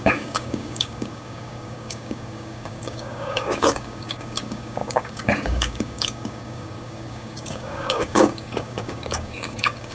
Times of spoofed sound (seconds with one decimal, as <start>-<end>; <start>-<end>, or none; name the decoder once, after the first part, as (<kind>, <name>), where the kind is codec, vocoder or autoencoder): 0.0-9.9 (codec, DAC)